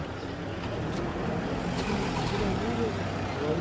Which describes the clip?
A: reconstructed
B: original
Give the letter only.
B